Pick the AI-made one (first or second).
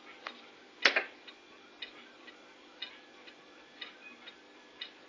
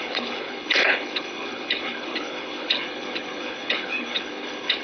second